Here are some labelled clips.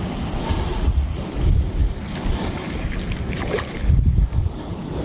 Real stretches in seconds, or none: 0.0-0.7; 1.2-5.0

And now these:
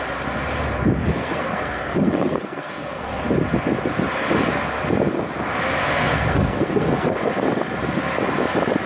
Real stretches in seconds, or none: 0.0-1.0; 3.2-5.8; 7.3-8.9

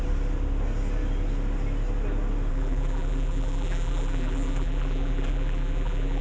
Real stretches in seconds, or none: 0.0-2.5

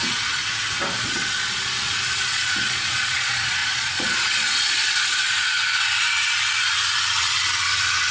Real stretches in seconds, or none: 0.4-1.0

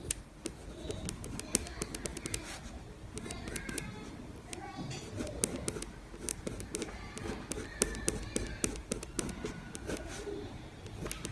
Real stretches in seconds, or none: 0.0-11.3

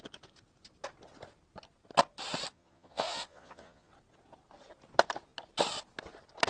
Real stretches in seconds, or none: 0.0-2.5; 3.9-6.5